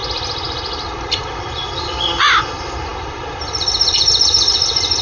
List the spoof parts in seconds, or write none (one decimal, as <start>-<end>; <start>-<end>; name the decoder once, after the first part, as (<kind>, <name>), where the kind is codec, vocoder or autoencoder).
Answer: none